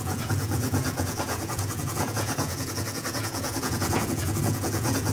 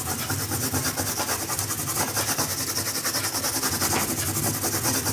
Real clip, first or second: second